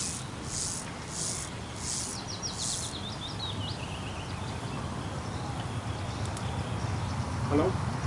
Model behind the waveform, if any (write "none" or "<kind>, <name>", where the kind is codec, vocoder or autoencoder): none